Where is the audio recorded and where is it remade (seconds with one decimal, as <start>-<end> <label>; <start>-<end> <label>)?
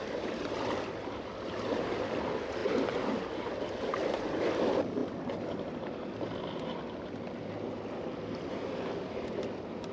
0.0-9.9 recorded